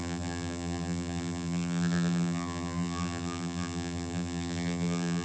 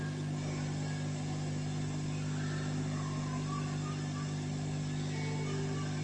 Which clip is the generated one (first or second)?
first